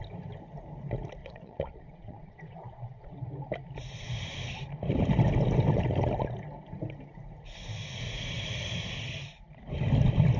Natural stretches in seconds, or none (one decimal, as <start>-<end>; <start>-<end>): 0.0-1.2; 3.1-10.4